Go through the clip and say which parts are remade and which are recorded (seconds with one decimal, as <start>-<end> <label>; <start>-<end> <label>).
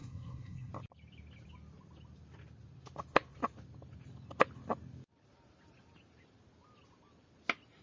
0.0-0.7 remade; 0.7-7.8 recorded